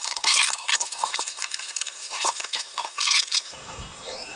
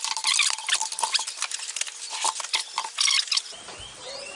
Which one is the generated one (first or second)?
first